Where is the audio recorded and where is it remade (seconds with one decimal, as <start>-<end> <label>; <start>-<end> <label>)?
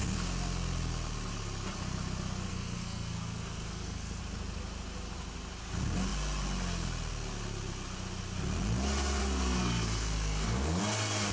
0.0-2.5 recorded; 2.5-4.2 remade; 4.2-9.2 recorded; 9.2-10.8 remade; 10.8-11.3 recorded